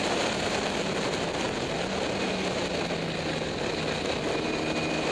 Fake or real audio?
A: real